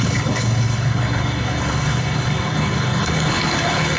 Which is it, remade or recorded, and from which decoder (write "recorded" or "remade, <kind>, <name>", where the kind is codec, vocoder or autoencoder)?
remade, codec, HILCodec